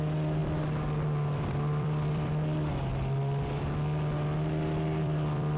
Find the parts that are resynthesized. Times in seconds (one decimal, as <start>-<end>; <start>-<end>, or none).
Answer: 0.0-0.4; 1.4-2.9; 5.0-5.6

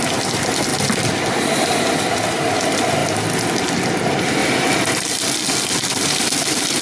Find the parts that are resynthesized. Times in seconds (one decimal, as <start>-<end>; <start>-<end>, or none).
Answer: 0.7-2.6; 5.8-6.8

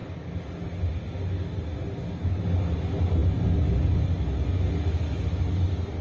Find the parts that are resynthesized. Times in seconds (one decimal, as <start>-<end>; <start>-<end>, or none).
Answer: none